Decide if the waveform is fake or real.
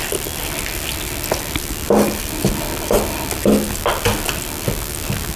real